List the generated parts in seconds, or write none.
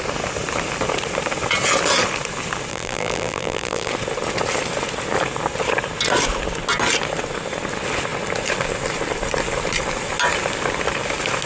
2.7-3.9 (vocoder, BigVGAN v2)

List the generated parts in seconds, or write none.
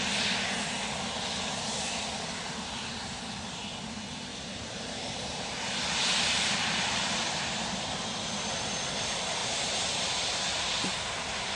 4.3-7.8 (vocoder, BigVGAN v2); 9.4-10.9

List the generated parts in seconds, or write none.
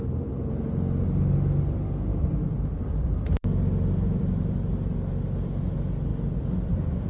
2.1-4.5 (vocoder, BigVGAN v2); 6.1-7.1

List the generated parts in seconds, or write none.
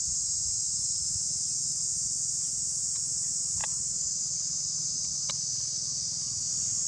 none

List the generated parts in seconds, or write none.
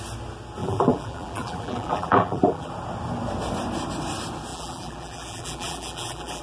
0.6-2.7 (vocoder, BigVGAN v2); 4.5-6.4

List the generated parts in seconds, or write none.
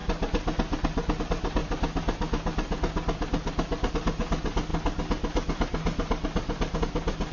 none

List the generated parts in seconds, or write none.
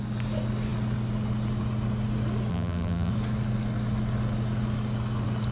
2.5-3.1 (vocoder, BigVGAN v2)